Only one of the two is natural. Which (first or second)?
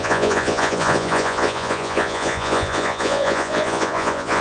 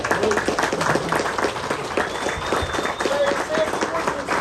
second